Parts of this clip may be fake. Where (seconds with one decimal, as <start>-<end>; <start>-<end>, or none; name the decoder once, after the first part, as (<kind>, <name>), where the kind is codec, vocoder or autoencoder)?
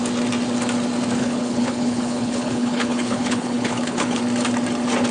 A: 1.2-4.2 (codec, HILCodec)